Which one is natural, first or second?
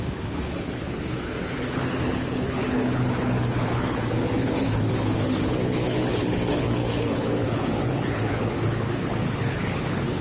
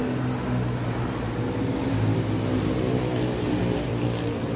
second